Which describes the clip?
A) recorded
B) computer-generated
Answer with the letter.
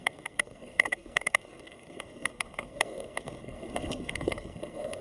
B